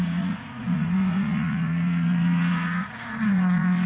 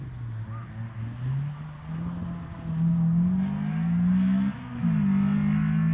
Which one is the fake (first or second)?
first